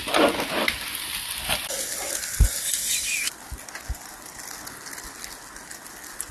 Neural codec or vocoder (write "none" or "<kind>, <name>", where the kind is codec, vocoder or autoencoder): none